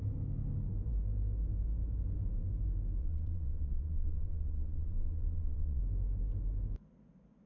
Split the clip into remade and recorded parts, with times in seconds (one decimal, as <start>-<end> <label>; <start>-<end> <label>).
0.0-3.0 recorded; 3.0-5.8 remade; 5.8-7.5 recorded